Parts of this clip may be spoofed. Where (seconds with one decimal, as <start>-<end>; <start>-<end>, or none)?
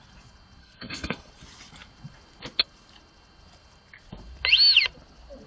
0.6-1.3